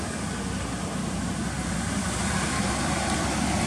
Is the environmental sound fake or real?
real